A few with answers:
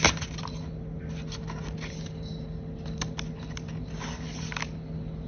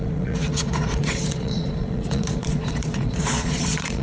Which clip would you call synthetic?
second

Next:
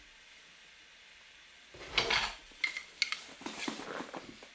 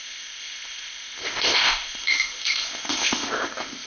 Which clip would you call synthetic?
second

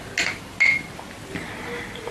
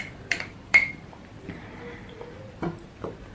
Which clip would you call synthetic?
second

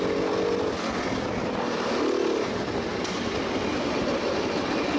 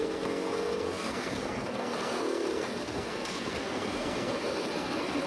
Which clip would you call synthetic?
second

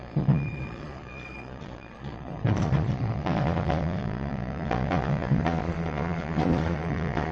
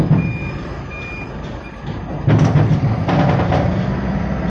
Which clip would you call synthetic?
first